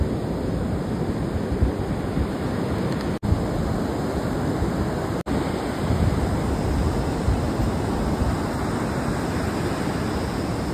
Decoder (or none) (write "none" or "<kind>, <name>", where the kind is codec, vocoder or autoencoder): none